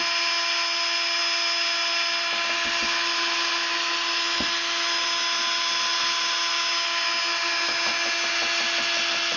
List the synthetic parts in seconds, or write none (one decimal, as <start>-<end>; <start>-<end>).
none